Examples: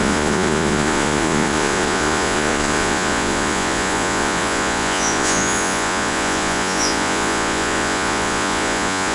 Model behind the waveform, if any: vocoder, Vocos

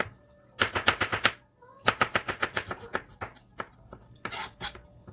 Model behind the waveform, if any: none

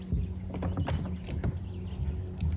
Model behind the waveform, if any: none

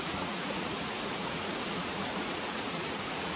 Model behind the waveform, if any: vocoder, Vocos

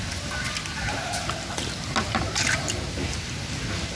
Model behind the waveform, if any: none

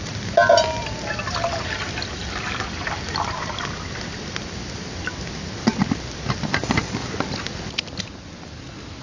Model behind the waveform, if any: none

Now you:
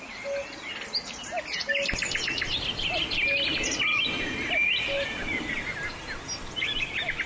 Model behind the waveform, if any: none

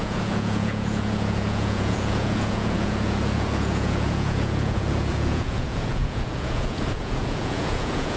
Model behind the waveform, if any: vocoder, Vocos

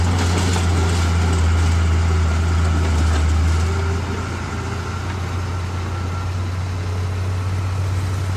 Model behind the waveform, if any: none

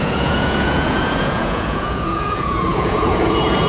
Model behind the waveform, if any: vocoder, Vocos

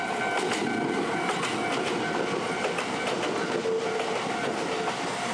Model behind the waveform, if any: none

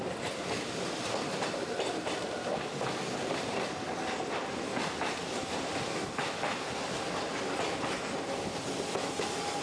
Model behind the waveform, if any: none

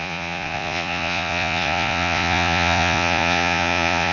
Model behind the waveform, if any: vocoder, Vocos